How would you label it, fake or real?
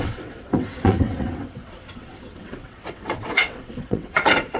fake